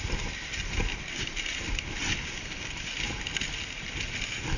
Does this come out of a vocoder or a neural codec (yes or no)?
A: no